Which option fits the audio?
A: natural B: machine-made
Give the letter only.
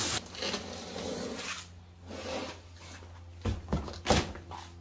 A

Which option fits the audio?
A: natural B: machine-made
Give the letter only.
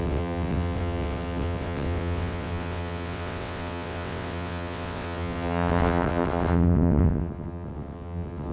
B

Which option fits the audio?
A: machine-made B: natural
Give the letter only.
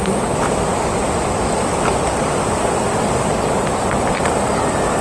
B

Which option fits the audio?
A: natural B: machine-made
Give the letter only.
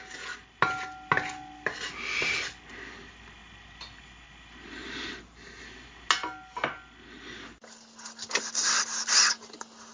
A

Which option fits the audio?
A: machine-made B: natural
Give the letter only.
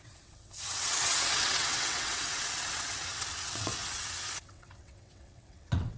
A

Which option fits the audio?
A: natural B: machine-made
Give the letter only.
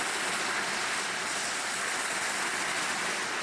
A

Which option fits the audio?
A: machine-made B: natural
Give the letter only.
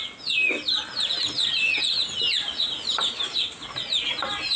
B